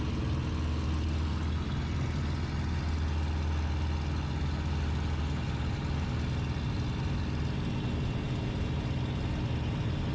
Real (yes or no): yes